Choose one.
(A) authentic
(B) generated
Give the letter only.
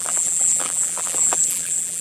B